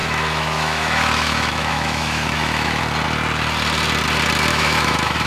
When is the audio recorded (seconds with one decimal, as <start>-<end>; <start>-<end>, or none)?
2.8-4.5